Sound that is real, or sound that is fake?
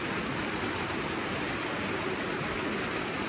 real